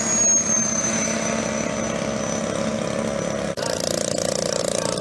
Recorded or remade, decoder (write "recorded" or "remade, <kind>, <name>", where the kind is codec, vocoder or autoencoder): recorded